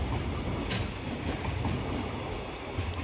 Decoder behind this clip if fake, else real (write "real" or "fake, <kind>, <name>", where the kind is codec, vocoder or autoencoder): real